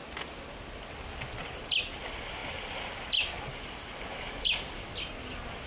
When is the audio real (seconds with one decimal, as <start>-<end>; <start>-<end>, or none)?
0.0-5.7